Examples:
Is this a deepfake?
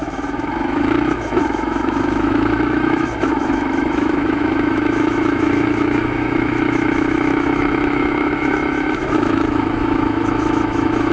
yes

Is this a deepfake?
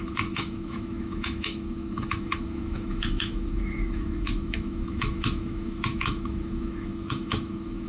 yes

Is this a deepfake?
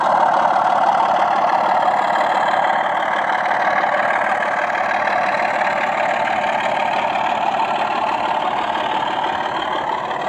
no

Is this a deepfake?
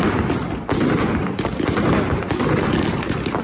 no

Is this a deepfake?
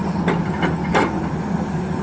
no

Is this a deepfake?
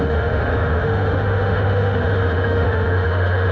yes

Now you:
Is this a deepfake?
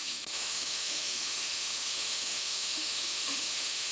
yes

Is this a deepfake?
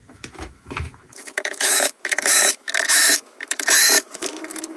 yes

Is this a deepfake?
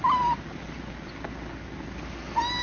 no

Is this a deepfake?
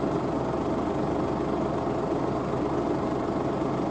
no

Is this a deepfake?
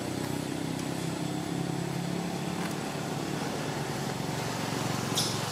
no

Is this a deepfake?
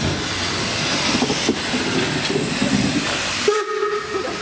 no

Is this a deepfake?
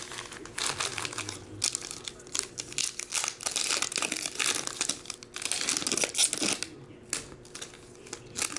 no